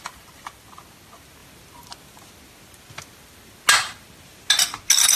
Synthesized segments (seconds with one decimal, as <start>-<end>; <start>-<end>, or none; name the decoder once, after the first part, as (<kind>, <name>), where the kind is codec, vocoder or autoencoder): none

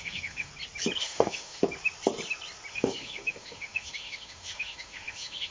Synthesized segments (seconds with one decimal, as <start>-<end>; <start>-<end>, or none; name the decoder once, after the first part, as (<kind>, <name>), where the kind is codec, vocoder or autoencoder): 0.0-0.5 (autoencoder, DAC-VAE); 1.0-1.6; 2.7-5.5